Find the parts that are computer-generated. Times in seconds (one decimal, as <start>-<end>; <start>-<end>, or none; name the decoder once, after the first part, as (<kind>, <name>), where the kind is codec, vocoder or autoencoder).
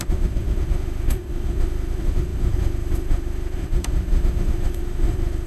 0.0-5.5 (autoencoder, DAC-VAE)